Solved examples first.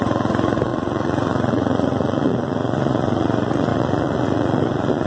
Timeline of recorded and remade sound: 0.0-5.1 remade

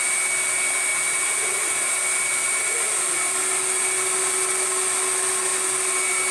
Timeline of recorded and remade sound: 0.0-6.3 recorded

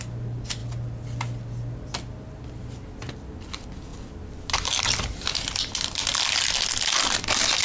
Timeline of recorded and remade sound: 0.0-7.6 recorded

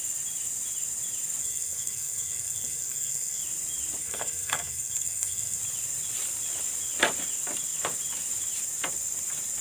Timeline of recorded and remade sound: 0.0-1.4 recorded; 1.4-3.4 remade; 3.4-4.0 recorded; 4.0-5.6 remade; 5.6-9.6 recorded

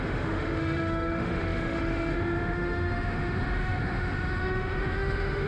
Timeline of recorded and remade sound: 0.0-5.5 remade

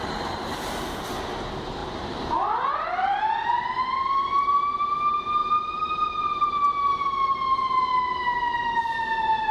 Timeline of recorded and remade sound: 0.0-1.8 recorded; 1.8-3.2 remade; 3.2-9.5 recorded

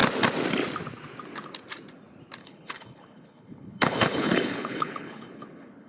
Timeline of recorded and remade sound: 0.0-2.4 recorded; 2.4-5.9 remade